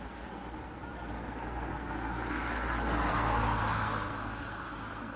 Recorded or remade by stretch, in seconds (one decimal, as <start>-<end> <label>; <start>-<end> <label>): 0.0-5.2 remade

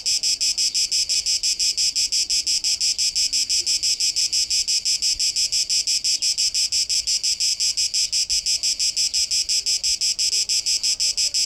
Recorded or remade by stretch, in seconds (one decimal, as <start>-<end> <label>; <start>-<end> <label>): 0.0-11.5 recorded

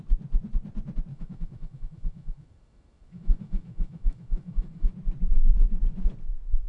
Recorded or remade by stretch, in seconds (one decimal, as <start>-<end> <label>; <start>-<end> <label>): 0.0-1.1 recorded; 1.1-4.9 remade; 4.9-6.7 recorded

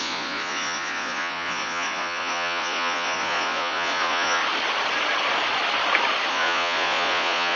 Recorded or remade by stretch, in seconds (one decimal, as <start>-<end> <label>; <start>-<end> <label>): 0.0-4.4 remade; 4.4-6.3 recorded; 6.3-7.6 remade